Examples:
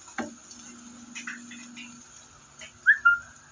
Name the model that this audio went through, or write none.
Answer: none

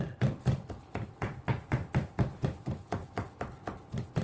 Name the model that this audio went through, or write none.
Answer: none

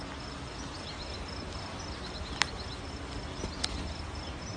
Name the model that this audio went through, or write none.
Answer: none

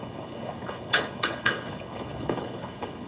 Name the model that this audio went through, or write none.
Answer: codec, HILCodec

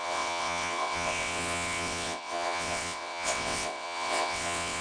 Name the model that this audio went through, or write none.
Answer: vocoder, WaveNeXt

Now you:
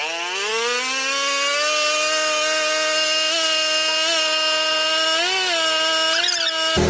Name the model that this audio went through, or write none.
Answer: none